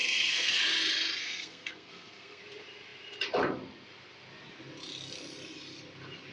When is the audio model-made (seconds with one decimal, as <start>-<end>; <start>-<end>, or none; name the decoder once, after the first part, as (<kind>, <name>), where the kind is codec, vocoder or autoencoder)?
0.0-0.6 (codec, SNAC); 1.2-2.4